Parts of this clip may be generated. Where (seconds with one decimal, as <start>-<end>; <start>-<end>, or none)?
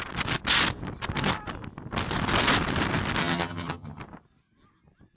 3.2-4.0